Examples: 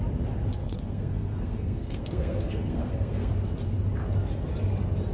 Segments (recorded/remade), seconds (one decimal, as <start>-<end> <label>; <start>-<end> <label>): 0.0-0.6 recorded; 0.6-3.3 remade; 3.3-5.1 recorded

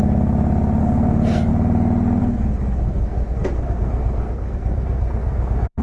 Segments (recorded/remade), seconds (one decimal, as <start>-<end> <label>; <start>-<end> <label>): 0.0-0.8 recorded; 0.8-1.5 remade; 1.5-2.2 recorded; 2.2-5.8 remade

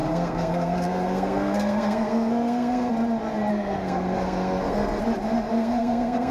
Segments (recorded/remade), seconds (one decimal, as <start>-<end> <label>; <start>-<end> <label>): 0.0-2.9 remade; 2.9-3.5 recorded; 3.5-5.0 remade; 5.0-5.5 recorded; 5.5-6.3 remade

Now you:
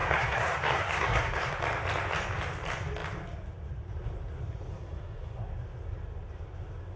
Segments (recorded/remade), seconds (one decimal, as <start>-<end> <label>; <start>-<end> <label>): 0.0-1.5 remade; 1.5-4.7 recorded; 4.7-5.4 remade; 5.4-7.0 recorded

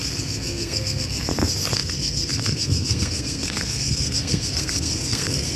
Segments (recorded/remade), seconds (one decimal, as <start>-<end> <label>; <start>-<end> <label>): 0.0-5.6 remade